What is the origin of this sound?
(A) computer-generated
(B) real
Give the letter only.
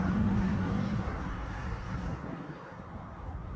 A